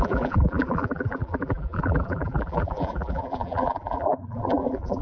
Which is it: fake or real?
fake